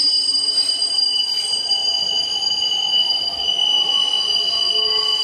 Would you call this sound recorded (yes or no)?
yes